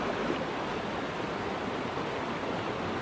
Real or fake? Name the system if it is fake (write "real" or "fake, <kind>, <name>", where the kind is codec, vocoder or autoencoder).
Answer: real